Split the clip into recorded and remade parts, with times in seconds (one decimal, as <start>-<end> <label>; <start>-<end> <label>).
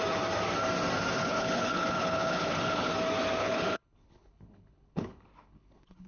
0.0-1.3 recorded; 1.3-2.9 remade; 2.9-3.4 recorded; 3.4-6.1 remade